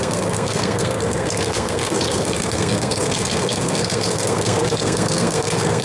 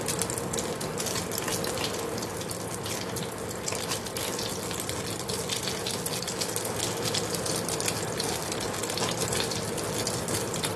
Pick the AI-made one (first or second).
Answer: first